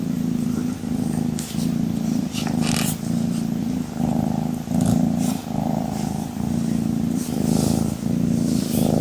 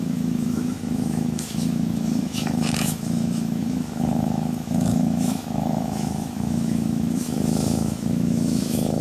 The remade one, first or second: second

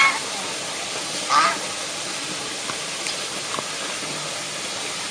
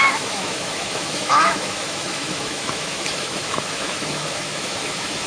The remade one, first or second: second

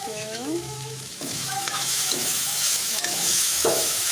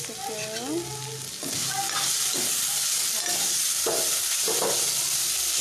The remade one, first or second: first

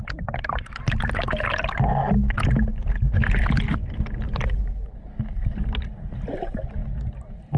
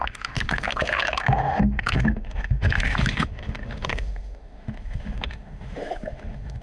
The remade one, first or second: second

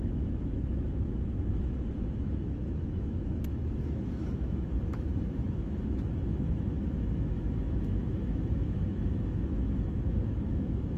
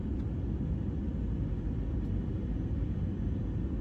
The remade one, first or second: first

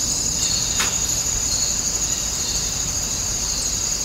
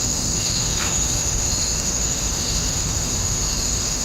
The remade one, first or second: second